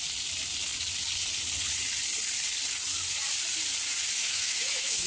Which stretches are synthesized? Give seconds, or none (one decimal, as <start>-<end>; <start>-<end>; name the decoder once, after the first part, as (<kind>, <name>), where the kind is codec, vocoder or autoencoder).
4.2-5.1 (autoencoder, DAC-VAE)